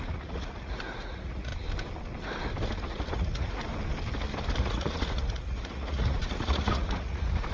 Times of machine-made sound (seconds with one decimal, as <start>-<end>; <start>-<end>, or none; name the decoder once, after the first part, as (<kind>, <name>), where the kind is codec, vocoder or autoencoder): 0.0-1.5 (vocoder, Vocos); 2.8-3.6; 4.6-7.5

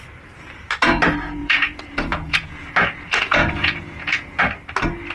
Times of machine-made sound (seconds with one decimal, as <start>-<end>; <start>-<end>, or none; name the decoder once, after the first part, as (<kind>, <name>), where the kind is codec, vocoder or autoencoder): 1.4-4.4 (vocoder, Vocos)

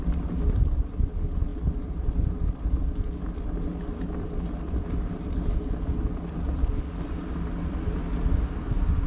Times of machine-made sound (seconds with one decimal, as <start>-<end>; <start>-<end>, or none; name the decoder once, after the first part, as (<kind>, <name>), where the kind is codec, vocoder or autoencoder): none

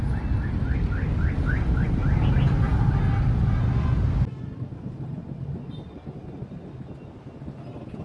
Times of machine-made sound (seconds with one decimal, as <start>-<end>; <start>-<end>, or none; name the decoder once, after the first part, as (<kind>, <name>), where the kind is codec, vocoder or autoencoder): none

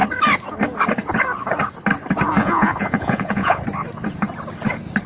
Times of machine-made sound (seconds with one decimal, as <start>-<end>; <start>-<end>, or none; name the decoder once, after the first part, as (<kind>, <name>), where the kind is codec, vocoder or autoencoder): 2.4-3.6 (vocoder, Vocos)